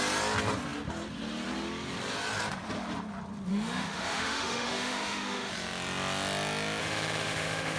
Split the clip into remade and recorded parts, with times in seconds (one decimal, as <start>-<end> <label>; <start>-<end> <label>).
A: 0.0-3.5 recorded; 3.5-5.5 remade; 5.5-6.8 recorded; 6.8-7.8 remade

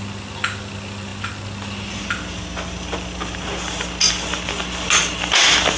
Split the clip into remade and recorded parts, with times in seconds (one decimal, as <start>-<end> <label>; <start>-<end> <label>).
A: 0.0-5.8 recorded

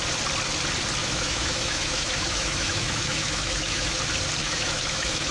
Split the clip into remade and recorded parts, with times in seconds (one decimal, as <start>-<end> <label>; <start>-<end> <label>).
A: 0.0-1.0 recorded; 1.0-4.0 remade; 4.0-4.4 recorded; 4.4-5.3 remade

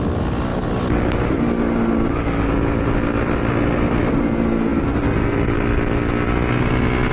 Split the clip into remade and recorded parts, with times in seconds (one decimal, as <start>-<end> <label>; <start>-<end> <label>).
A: 0.0-7.1 recorded